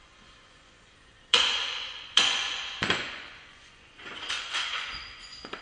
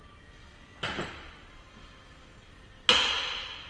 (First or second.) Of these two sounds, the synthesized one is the first